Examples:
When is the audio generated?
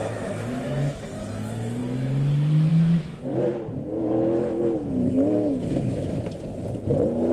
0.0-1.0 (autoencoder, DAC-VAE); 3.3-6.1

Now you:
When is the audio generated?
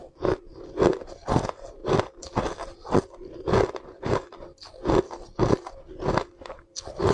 none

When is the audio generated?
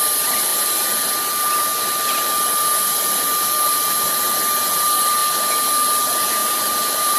6.4-7.2 (vocoder, BigVGAN v2)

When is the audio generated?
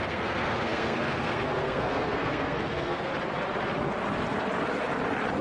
0.0-3.1 (codec, SNAC)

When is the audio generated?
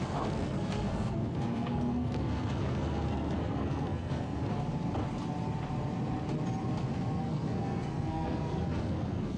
0.0-4.4 (codec, SNAC); 7.2-9.4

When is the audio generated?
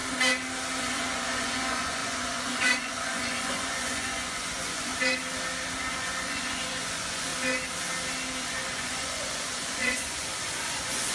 0.8-4.9 (vocoder, Vocos); 5.9-7.3; 8.4-11.1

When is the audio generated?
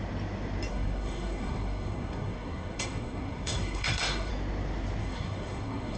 0.7-4.3 (codec, SNAC); 5.0-6.0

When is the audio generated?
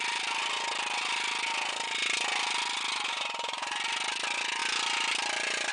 0.0-2.0 (vocoder, BigVGAN v2); 2.6-4.6